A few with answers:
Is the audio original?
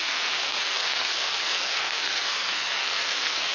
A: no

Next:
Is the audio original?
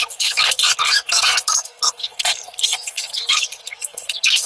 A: no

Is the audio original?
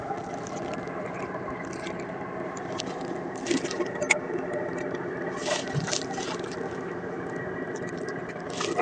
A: yes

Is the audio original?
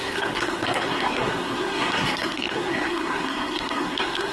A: no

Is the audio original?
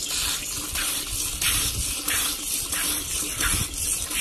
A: yes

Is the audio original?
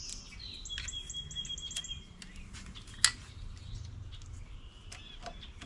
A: yes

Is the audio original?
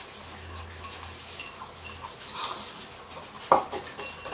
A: yes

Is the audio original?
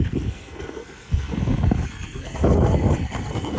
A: no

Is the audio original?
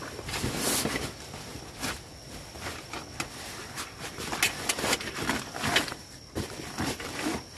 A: yes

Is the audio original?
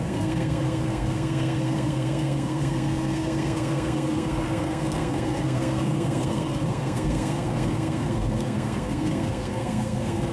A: no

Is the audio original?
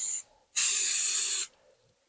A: yes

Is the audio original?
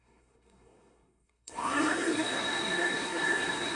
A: no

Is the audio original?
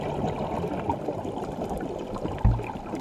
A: yes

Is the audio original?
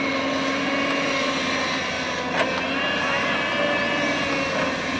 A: yes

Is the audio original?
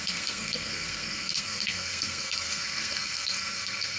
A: no